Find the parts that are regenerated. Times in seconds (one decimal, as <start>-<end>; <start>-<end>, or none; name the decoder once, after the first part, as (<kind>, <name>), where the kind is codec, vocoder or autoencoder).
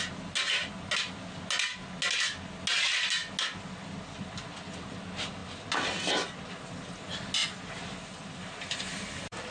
none